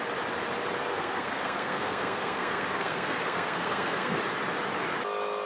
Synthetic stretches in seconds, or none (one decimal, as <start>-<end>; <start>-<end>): 0.9-4.2